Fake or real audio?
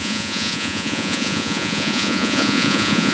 fake